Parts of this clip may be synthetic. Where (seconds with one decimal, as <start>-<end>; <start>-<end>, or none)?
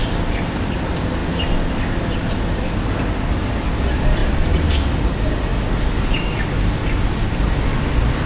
none